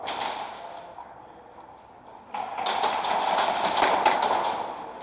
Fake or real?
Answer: real